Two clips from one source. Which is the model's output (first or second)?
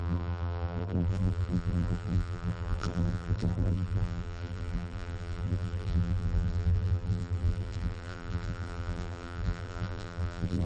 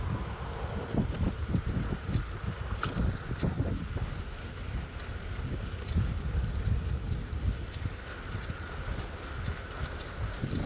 first